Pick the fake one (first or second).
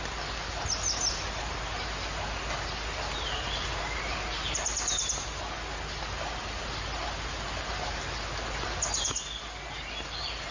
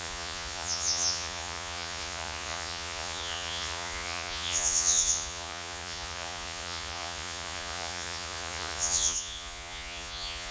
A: second